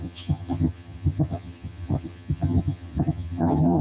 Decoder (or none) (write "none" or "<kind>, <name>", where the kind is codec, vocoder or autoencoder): vocoder, HiFi-GAN